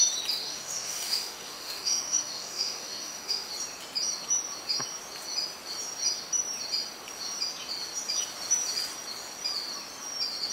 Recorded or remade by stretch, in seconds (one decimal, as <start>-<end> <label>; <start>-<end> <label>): 0.0-0.4 recorded; 0.4-3.5 remade; 3.5-10.5 recorded